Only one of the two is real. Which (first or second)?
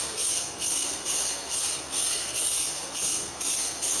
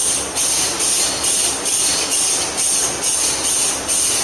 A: second